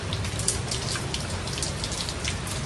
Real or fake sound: fake